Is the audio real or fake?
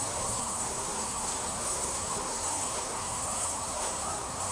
fake